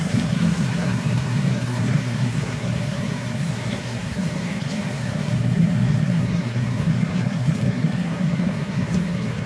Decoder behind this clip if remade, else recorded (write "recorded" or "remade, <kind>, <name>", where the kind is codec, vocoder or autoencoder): remade, codec, SNAC